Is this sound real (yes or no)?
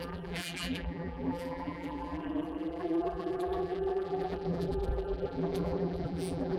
no